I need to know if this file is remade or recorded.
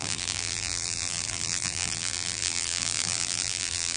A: remade